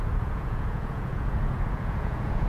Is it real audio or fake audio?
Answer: fake